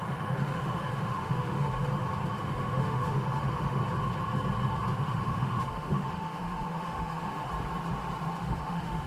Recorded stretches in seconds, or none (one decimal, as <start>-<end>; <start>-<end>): 1.9-2.4; 3.8-5.0; 7.5-8.4